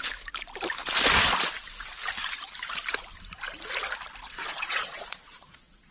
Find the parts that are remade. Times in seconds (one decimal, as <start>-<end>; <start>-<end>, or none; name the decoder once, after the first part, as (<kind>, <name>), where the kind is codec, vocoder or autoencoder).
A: 4.4-5.9 (vocoder, Vocos)